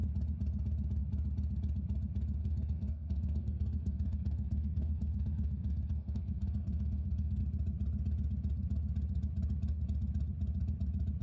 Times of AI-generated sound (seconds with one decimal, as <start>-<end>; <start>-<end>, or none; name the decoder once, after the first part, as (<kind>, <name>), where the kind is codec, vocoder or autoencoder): 2.4-7.4 (codec, SNAC)